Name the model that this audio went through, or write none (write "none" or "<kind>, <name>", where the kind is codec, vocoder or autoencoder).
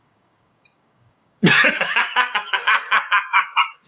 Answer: codec, DAC